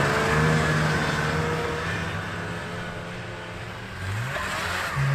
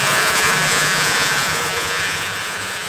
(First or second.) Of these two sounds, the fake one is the second